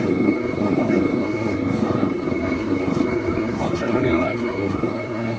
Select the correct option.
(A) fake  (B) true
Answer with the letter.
A